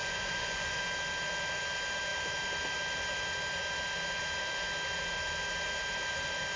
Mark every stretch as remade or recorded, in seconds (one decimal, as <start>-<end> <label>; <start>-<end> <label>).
0.0-0.8 remade; 0.8-6.6 recorded